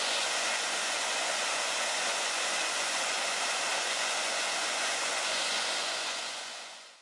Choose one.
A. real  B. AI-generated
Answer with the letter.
B